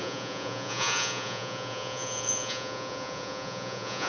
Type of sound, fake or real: fake